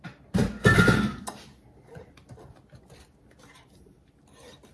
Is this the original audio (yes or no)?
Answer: yes